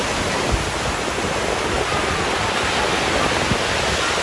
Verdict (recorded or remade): recorded